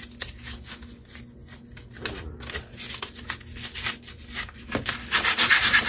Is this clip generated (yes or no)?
no